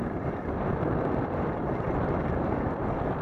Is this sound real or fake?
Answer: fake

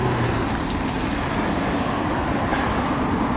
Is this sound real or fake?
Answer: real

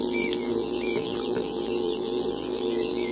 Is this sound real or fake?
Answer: fake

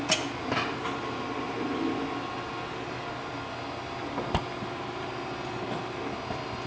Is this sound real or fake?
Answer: real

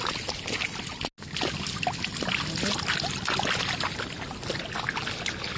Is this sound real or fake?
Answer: real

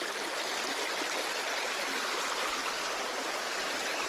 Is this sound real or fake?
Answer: real